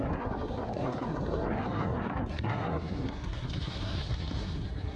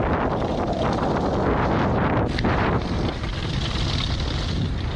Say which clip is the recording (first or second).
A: second